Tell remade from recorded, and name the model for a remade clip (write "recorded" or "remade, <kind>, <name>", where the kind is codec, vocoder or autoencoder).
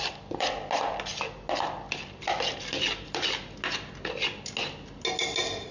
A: recorded